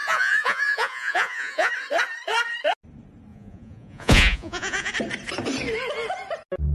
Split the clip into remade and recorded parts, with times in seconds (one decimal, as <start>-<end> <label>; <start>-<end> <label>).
0.0-1.7 remade; 1.7-3.3 recorded; 3.3-4.9 remade; 4.9-6.7 recorded